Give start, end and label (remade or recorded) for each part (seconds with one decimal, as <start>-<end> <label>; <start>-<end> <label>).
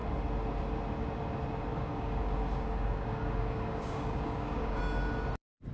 0.0-1.7 recorded; 1.7-4.8 remade; 4.8-5.7 recorded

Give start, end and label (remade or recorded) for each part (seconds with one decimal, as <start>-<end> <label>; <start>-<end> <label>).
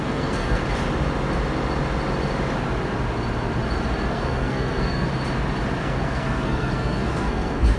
0.0-0.6 remade; 0.6-4.1 recorded; 4.1-5.1 remade; 5.1-5.8 recorded; 5.8-7.8 remade